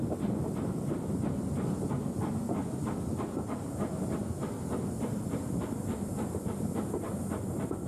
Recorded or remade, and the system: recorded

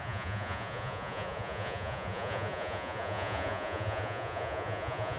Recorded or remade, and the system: remade, vocoder, Vocos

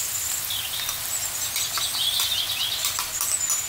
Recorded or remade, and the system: recorded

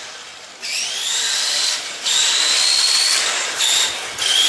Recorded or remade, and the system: remade, vocoder, BigVGAN v2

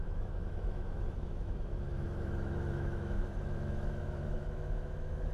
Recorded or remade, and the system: remade, autoencoder, DAC-VAE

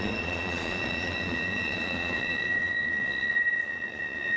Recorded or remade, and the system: remade, vocoder, Vocos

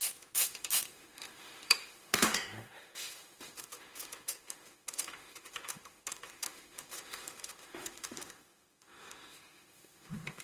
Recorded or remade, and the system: remade, autoencoder, DAC-VAE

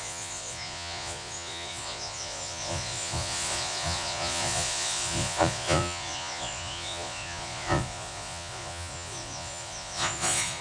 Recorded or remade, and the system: remade, vocoder, Vocos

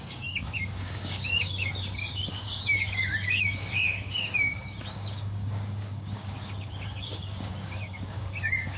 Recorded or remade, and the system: remade, codec, DAC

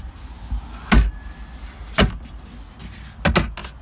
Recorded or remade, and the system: recorded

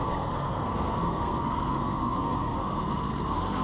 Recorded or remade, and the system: remade, codec, SNAC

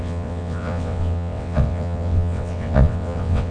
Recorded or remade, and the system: remade, vocoder, WaveNeXt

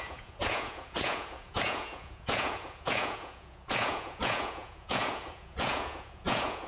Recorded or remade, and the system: remade, vocoder, Vocos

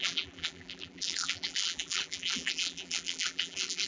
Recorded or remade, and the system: remade, vocoder, BigVGAN v2